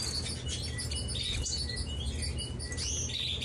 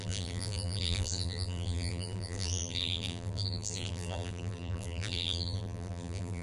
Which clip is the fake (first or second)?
second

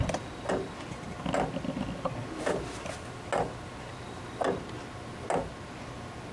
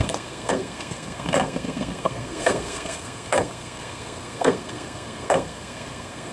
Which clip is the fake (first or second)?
second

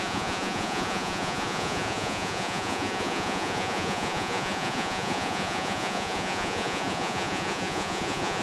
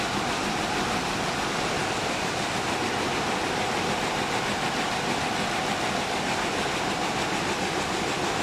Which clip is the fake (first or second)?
first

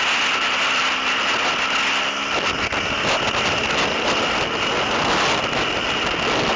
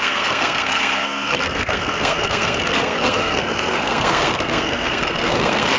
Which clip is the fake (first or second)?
second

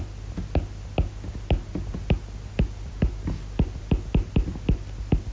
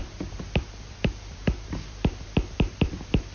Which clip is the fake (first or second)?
second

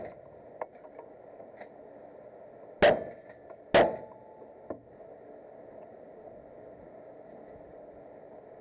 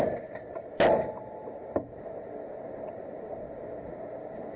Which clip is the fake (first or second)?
second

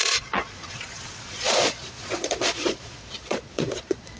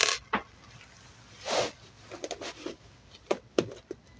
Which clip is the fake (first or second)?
first